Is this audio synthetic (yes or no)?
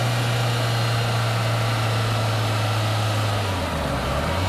no